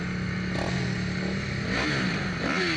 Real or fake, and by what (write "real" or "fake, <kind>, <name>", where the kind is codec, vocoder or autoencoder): real